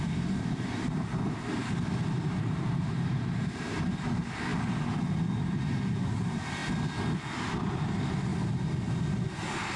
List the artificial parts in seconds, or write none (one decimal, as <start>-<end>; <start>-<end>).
0.0-4.5; 5.4-6.6; 7.7-8.3; 9.4-9.8